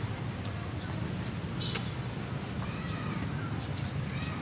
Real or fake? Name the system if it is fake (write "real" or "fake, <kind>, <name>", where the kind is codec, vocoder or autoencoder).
real